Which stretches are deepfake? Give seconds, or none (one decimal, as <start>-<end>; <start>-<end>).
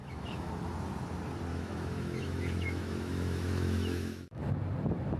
0.0-0.5; 1.5-4.4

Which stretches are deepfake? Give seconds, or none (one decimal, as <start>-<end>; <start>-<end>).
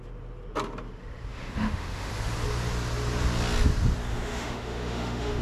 1.3-2.1; 4.1-5.4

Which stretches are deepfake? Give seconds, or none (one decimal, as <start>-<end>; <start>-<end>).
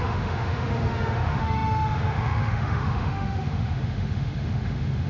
0.0-5.1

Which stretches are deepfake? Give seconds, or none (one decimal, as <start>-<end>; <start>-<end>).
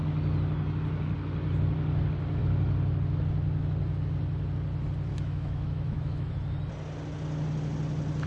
5.1-6.3